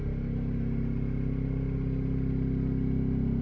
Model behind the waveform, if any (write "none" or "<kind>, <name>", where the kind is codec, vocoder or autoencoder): none